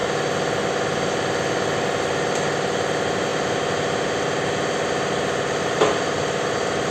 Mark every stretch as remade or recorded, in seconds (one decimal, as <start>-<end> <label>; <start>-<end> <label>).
0.0-6.9 recorded